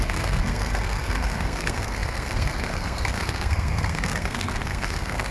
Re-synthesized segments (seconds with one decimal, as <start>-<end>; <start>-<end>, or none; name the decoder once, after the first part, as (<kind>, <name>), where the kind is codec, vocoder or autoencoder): 0.0-5.3 (codec, SNAC)